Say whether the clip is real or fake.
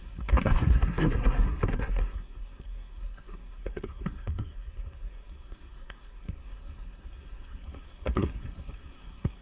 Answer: fake